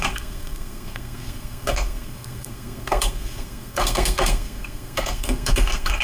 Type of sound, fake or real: fake